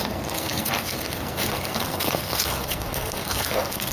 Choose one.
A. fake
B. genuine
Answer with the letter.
A